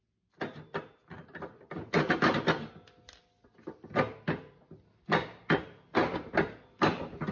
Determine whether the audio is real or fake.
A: real